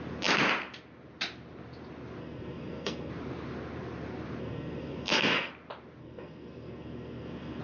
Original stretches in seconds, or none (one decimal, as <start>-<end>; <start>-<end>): 0.0-2.2; 3.1-4.4; 5.5-6.0